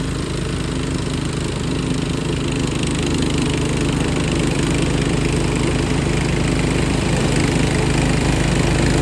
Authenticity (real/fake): fake